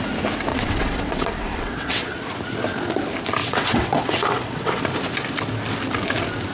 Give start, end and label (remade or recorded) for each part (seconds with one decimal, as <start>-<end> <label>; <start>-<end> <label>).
0.0-0.5 recorded; 0.5-2.3 remade; 2.3-3.4 recorded; 3.4-4.8 remade; 4.8-6.5 recorded